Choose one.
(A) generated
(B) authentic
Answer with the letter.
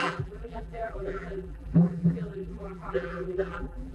A